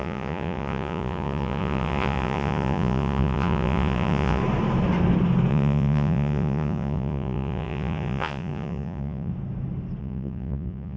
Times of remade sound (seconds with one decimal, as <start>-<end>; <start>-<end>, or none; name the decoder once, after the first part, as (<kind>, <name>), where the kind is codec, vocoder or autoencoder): 0.0-4.4 (vocoder, Vocos); 5.5-9.3; 10.0-11.0